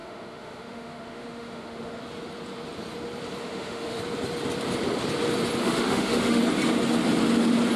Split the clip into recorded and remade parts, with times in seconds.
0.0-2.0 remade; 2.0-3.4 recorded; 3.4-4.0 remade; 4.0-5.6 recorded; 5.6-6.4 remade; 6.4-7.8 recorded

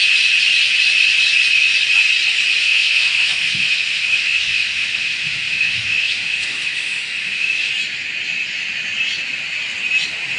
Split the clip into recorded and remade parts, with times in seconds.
0.0-2.6 recorded; 2.6-7.7 remade; 7.7-10.4 recorded

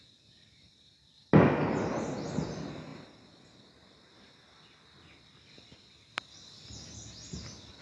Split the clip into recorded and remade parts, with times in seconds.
0.0-7.8 recorded

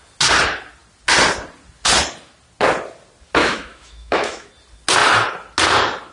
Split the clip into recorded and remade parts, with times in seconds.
0.0-3.4 recorded; 3.4-4.5 remade; 4.5-6.1 recorded

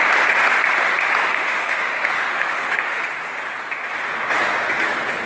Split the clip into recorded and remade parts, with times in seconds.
0.0-1.3 recorded; 1.3-3.0 remade; 3.0-5.3 recorded